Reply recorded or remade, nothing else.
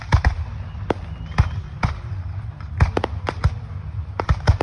remade